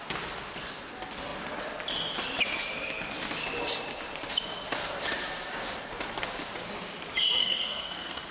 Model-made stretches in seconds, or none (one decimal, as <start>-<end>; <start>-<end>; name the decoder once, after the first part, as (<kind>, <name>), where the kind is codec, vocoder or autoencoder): 7.4-8.3 (codec, SNAC)

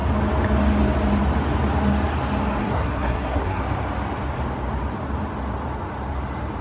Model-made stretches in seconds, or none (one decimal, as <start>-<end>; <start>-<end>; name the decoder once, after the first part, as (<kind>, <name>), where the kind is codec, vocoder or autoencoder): 2.6-3.6 (codec, SNAC)

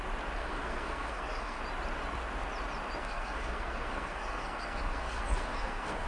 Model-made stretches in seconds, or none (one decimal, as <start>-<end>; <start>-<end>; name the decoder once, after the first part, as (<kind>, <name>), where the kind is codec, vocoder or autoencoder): 0.4-1.6 (codec, SNAC); 3.0-6.1

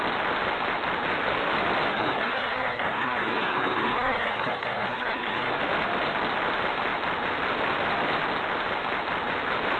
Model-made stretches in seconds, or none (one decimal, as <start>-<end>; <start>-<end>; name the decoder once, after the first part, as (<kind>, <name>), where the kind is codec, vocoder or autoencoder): 1.9-5.6 (codec, SNAC)

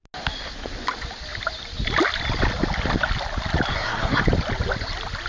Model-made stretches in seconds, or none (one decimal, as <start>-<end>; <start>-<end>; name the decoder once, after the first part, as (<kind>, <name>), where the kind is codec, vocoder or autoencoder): 3.7-4.2 (codec, SNAC)

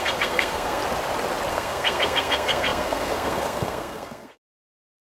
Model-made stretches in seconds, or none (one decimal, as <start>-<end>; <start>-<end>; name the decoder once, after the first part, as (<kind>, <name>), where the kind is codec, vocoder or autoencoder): 0.0-0.8 (codec, SNAC); 1.5-5.0